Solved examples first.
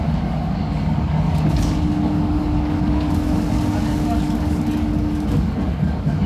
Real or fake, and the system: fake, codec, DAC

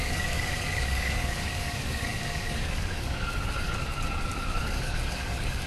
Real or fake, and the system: fake, codec, DAC